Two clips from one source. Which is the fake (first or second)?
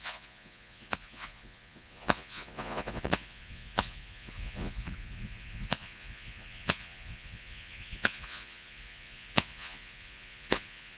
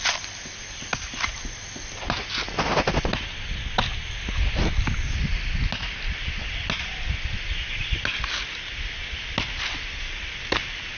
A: first